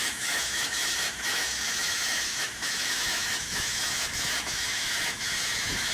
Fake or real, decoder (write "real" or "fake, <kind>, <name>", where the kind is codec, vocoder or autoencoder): fake, autoencoder, DAC-VAE